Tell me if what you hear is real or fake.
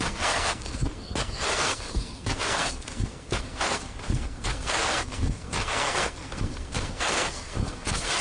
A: fake